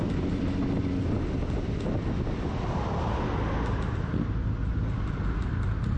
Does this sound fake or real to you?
real